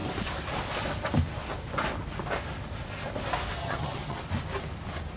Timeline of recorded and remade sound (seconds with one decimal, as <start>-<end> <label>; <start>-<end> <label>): 0.0-3.6 recorded; 3.6-4.2 remade; 4.2-5.2 recorded